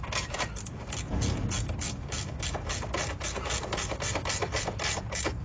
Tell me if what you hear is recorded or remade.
recorded